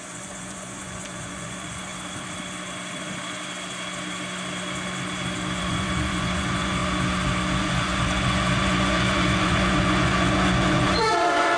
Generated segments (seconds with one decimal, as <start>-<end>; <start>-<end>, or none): 0.0-1.9; 5.6-6.8; 7.6-11.6